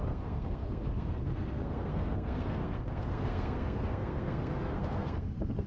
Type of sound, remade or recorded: remade